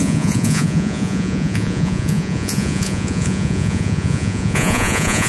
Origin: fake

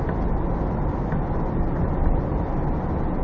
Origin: real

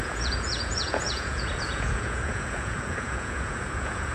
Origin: fake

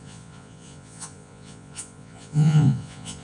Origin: fake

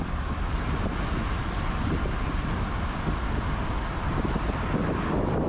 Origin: real